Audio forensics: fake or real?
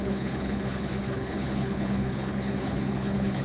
fake